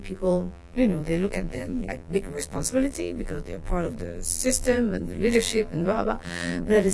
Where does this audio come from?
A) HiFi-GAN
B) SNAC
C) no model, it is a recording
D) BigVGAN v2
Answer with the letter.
D